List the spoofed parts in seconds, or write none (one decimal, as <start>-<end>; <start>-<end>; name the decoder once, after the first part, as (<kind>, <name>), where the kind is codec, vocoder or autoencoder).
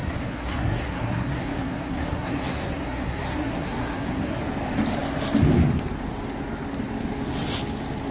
0.0-4.4 (codec, SNAC)